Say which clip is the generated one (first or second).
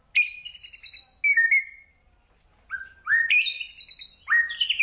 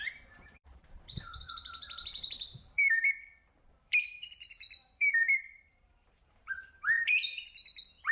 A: second